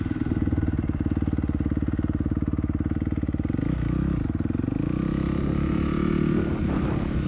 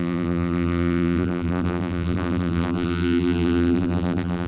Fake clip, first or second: second